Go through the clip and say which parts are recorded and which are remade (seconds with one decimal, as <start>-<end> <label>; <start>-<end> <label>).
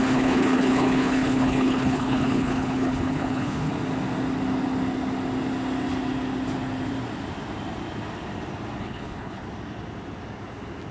0.0-3.7 remade; 3.7-8.8 recorded; 8.8-9.4 remade; 9.4-10.9 recorded